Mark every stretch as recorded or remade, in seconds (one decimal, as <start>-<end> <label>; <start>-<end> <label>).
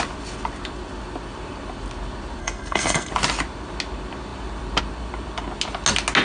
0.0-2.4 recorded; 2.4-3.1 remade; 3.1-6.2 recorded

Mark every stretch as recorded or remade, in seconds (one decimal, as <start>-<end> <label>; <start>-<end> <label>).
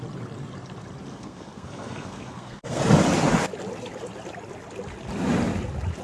0.0-1.1 recorded; 1.1-2.8 remade; 2.8-6.0 recorded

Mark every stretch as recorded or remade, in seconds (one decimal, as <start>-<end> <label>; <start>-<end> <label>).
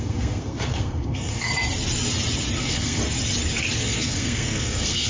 0.0-1.5 remade; 1.5-2.6 recorded; 2.6-3.0 remade; 3.0-3.8 recorded; 3.8-5.1 remade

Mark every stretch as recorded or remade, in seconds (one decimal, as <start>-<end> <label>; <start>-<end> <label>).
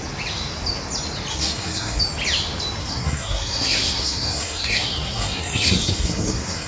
0.0-1.3 recorded; 1.3-2.0 remade; 2.0-2.8 recorded; 2.8-6.7 remade